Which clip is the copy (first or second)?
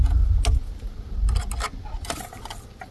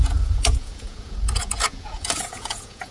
second